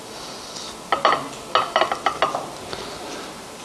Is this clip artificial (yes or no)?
no